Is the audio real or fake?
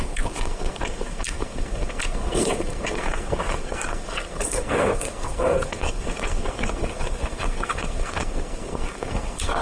fake